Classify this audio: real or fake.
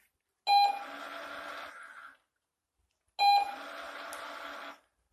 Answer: real